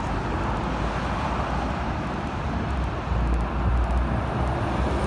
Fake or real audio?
real